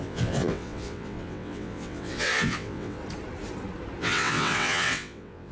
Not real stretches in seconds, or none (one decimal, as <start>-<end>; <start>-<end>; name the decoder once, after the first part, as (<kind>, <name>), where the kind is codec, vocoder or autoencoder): 0.0-3.0 (vocoder, WaveNeXt); 4.0-5.5